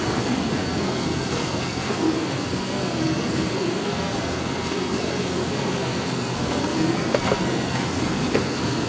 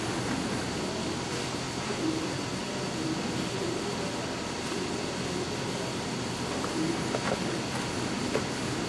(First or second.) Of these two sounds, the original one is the second